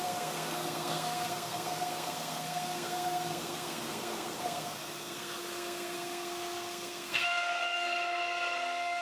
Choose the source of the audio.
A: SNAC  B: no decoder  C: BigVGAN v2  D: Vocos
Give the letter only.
A